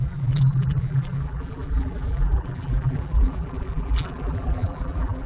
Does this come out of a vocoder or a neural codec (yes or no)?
yes